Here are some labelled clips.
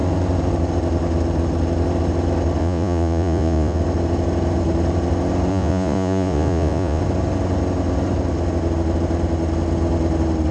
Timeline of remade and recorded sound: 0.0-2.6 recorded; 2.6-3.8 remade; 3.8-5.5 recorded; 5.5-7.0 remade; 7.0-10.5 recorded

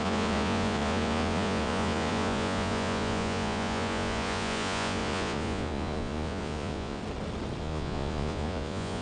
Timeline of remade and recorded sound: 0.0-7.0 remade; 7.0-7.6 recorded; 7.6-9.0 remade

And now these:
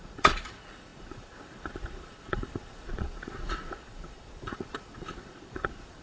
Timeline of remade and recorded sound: 0.0-6.0 remade

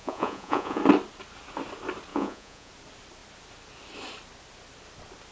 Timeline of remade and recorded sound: 0.0-0.8 remade; 0.8-2.1 recorded; 2.1-2.7 remade; 2.7-5.3 recorded

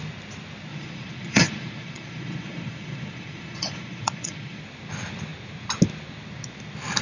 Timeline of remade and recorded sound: 0.0-0.7 recorded; 0.7-4.6 remade; 4.6-7.0 recorded

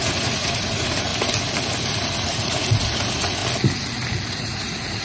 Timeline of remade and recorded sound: 0.0-1.1 remade; 1.1-1.8 recorded; 1.8-3.4 remade; 3.4-4.3 recorded; 4.3-5.0 remade

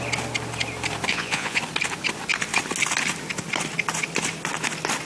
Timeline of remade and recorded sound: 0.0-1.1 recorded; 1.1-1.6 remade; 1.6-5.0 recorded